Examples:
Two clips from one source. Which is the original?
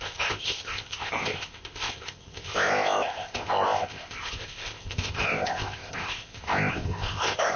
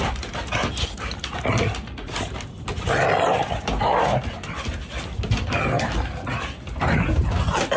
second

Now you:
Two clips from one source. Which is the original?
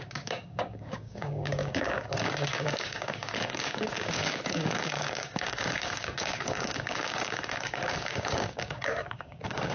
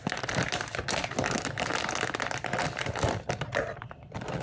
second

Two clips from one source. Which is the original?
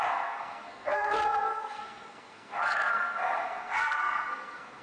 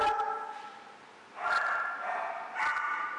second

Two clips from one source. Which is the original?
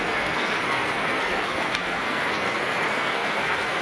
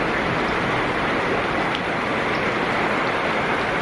second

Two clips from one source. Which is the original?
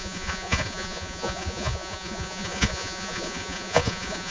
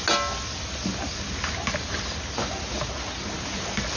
second